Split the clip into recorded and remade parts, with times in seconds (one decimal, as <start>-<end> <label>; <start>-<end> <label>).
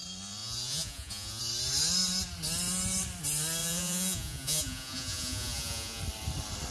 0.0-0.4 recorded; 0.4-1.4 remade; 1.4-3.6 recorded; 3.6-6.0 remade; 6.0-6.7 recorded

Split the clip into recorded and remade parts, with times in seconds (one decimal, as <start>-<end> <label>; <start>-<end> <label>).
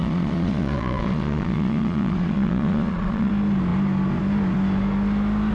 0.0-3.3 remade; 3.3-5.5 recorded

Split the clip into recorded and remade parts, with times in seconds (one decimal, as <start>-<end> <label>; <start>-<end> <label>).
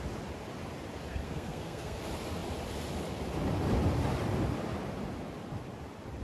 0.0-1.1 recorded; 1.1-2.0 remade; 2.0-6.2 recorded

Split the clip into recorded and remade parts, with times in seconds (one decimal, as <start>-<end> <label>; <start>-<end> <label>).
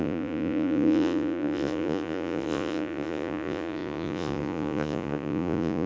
0.0-5.9 remade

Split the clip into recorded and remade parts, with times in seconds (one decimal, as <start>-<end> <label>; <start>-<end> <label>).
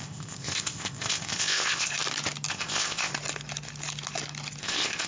0.0-1.9 remade; 1.9-2.5 recorded; 2.5-3.1 remade; 3.1-4.6 recorded; 4.6-5.1 remade